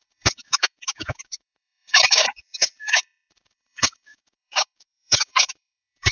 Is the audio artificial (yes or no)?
yes